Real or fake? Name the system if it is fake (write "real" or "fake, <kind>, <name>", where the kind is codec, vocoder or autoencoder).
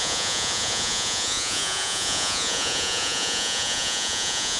fake, vocoder, Vocos